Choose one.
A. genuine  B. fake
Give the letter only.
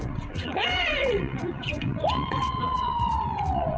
B